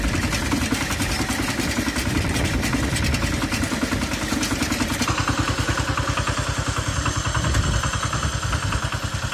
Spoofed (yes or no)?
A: no